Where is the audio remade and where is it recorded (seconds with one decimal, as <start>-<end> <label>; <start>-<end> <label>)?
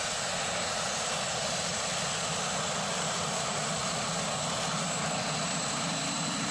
0.0-1.7 remade; 1.7-2.8 recorded; 2.8-3.8 remade; 3.8-5.6 recorded; 5.6-6.5 remade